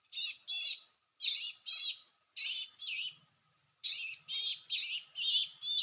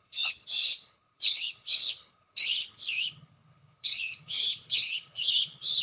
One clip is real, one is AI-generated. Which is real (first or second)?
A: first